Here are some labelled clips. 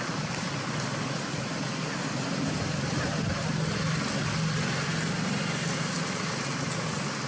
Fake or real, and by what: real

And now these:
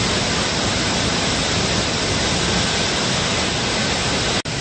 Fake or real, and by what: real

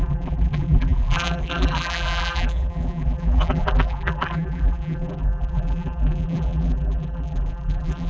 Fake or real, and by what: fake, vocoder, BigVGAN v2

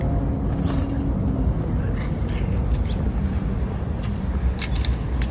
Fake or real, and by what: real